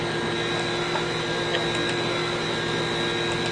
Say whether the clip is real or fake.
real